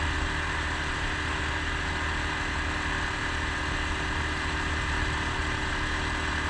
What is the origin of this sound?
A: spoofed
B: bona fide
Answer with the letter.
B